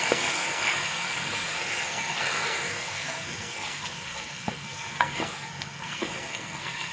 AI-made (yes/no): yes